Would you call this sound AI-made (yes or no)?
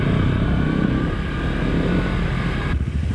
no